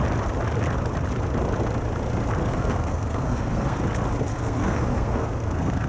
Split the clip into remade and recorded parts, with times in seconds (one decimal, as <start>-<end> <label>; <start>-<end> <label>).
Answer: 0.0-2.4 recorded; 2.4-3.8 remade; 3.8-4.3 recorded; 4.3-5.9 remade